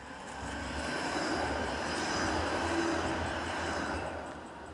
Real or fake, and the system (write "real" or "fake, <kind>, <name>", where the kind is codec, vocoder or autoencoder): real